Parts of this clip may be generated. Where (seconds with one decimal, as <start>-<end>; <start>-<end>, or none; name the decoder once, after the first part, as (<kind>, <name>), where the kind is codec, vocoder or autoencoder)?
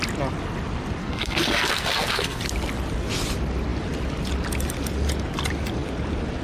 1.0-2.4 (codec, SNAC)